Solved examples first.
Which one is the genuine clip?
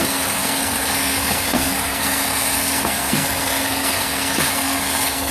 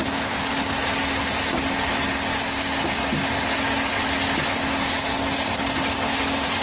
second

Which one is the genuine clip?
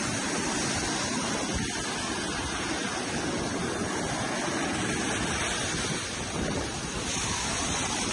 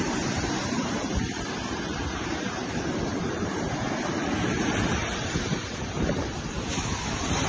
first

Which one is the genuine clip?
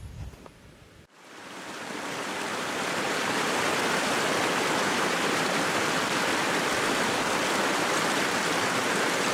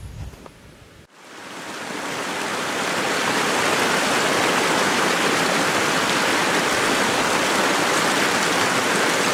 second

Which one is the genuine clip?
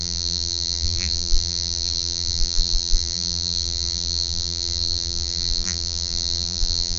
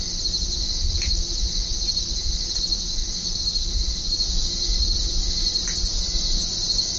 second